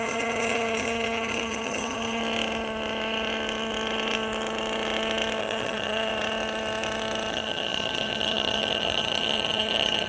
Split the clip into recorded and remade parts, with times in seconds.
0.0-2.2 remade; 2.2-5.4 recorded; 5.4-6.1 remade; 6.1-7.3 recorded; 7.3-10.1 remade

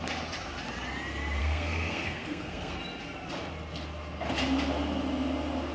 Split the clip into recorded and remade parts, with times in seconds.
0.0-1.4 recorded; 1.4-2.8 remade; 2.8-5.7 recorded

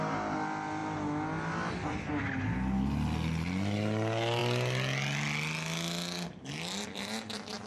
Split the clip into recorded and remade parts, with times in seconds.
0.0-7.7 recorded

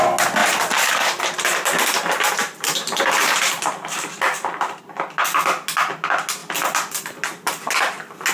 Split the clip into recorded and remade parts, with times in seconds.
0.0-0.4 recorded; 0.4-4.8 remade; 4.8-8.3 recorded

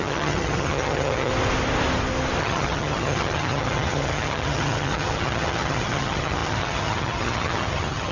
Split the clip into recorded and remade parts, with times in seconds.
0.0-1.3 remade; 1.3-2.4 recorded; 2.4-8.1 remade